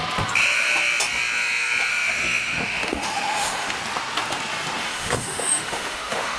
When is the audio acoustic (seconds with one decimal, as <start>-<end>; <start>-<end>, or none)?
0.0-1.9; 3.7-4.8